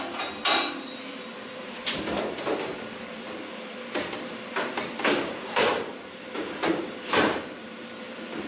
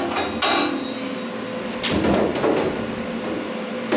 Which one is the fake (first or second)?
first